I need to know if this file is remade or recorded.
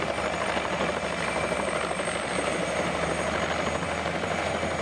recorded